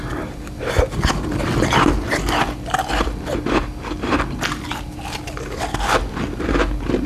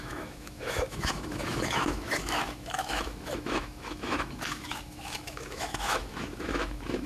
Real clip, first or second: first